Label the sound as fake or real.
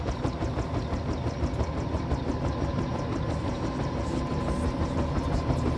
real